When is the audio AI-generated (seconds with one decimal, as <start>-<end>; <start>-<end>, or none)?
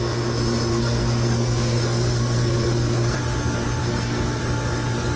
0.7-3.2; 3.8-4.4